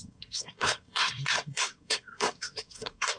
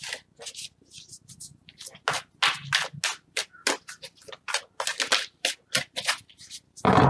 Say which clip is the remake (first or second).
first